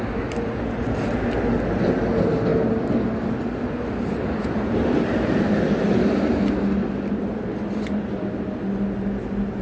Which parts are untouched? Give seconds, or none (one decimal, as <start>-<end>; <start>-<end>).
0.0-9.6